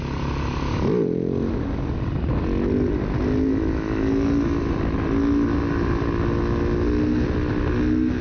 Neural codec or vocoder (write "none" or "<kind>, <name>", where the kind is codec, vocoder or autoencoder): none